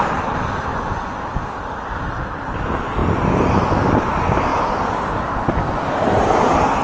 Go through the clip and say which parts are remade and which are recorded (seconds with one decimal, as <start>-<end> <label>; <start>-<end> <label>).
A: 0.0-0.7 recorded; 0.7-1.2 remade; 1.2-6.8 recorded

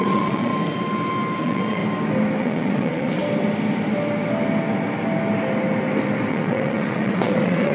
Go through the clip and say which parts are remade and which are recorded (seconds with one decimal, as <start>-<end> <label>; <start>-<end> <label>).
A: 0.0-0.5 remade; 0.5-1.4 recorded; 1.4-1.8 remade; 1.8-2.4 recorded; 2.4-3.2 remade; 3.2-6.3 recorded; 6.3-7.7 remade

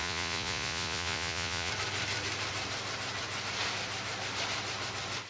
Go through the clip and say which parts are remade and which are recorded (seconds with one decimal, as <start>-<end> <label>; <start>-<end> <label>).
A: 0.0-1.7 remade; 1.7-5.3 recorded

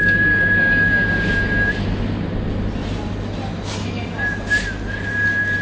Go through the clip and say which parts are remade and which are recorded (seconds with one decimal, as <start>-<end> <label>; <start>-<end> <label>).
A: 0.0-5.6 recorded

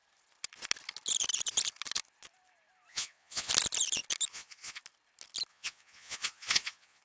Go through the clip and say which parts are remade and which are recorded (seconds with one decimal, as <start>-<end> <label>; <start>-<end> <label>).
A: 0.0-2.9 recorded; 2.9-3.5 remade; 3.5-4.3 recorded; 4.3-4.8 remade; 4.8-5.5 recorded; 5.5-7.0 remade

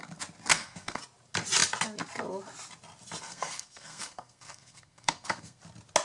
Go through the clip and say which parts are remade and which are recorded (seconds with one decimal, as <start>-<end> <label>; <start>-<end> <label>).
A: 0.0-0.5 recorded; 0.5-1.0 remade; 1.0-3.2 recorded; 3.2-5.6 remade; 5.6-6.0 recorded

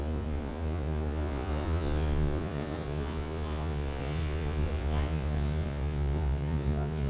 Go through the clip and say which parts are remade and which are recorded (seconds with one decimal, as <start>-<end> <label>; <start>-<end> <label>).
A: 0.0-7.1 remade